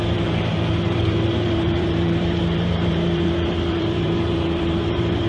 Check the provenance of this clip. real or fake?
fake